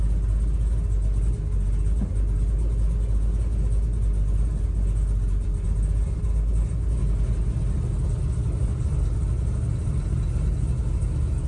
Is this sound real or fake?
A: real